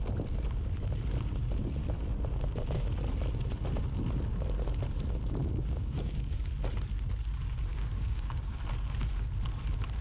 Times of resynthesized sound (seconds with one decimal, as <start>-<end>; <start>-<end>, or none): 5.4-6.5; 7.7-8.6